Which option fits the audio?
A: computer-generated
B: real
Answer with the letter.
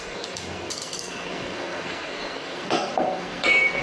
A